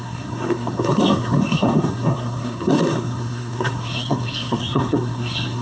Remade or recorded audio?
remade